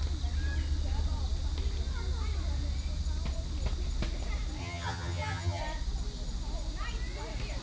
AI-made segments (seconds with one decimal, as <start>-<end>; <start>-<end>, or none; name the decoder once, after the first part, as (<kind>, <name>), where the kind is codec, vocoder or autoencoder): 4.6-5.6 (vocoder, HiFi-GAN)